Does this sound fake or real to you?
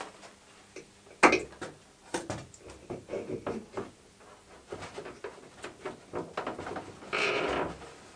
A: real